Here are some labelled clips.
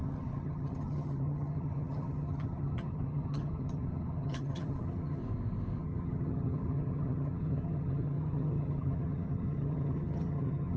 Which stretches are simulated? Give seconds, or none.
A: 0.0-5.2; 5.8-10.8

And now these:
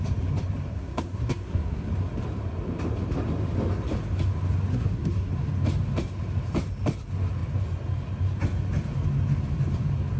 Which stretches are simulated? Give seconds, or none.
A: 0.7-1.9; 4.7-5.3

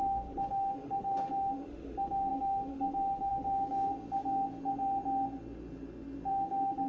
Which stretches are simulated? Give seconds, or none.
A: 0.0-3.9; 6.3-6.9